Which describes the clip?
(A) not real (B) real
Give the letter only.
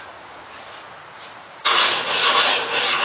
A